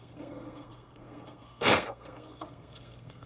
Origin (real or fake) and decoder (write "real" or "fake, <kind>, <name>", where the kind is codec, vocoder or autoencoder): fake, codec, SNAC